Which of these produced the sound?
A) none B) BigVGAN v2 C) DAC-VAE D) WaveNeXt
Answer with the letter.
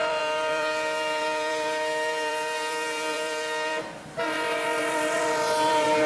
B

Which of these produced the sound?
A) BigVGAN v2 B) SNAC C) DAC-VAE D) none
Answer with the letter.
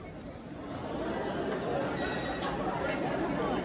D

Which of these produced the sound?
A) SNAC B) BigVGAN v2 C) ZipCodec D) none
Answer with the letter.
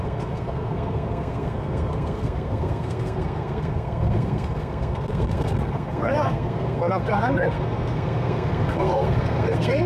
A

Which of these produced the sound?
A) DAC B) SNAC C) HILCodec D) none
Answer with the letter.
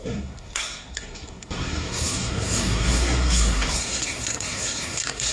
B